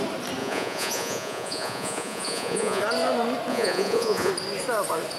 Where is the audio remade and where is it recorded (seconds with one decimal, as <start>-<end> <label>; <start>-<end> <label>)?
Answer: 0.0-0.4 recorded; 0.4-2.8 remade; 2.8-3.5 recorded; 3.5-4.3 remade; 4.3-5.2 recorded